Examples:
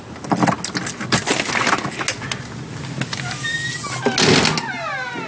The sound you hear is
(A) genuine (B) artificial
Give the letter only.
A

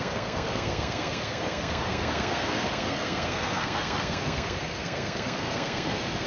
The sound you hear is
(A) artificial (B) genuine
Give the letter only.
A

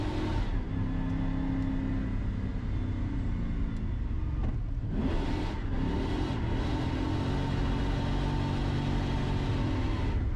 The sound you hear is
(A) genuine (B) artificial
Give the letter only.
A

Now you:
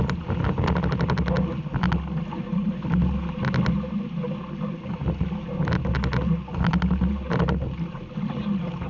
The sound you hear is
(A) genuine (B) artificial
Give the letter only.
A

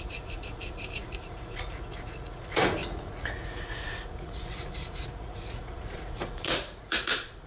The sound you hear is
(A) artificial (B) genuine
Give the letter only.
A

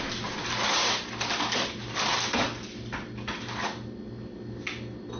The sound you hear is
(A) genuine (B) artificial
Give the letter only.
A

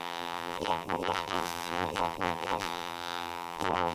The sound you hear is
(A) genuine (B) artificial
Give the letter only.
B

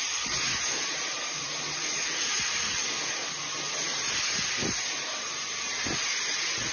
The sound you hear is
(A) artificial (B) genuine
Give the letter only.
B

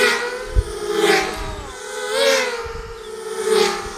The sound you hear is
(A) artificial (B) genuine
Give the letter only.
B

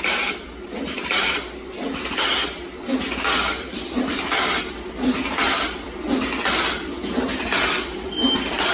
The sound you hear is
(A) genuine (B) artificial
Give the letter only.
B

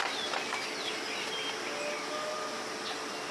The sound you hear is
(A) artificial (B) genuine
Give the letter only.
B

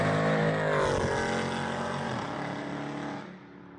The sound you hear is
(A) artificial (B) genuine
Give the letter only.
B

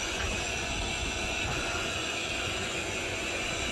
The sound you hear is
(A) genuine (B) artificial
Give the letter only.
B